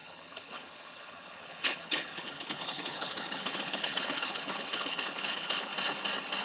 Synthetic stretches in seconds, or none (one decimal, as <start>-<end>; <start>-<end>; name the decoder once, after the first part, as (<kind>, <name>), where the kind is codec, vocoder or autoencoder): 0.0-5.7 (codec, HILCodec)